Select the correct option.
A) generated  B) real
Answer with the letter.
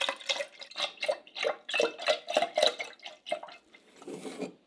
B